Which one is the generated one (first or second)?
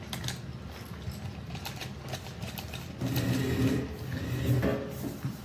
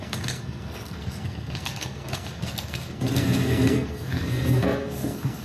second